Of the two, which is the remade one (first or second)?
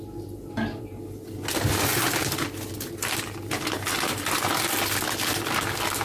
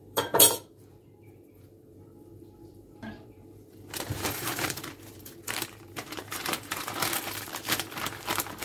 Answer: second